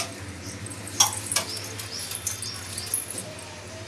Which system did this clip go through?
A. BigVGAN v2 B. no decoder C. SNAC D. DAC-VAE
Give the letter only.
B